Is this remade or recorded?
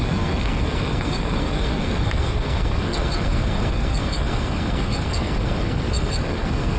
remade